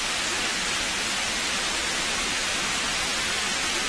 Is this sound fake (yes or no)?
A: no